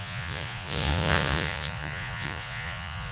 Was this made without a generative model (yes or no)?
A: no